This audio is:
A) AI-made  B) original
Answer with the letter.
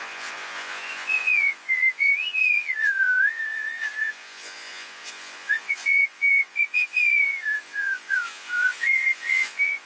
A